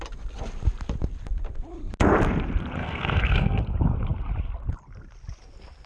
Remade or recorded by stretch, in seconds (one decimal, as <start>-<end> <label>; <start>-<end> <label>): 0.0-2.8 recorded; 2.8-3.6 remade; 3.6-5.9 recorded